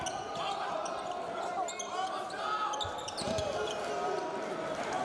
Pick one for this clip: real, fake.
real